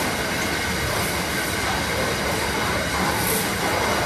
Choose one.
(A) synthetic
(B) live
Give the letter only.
B